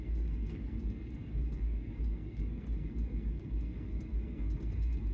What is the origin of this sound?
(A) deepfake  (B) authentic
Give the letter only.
A